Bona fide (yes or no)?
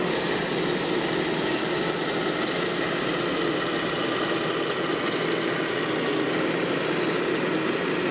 yes